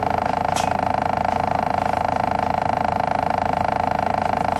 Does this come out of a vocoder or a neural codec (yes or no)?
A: no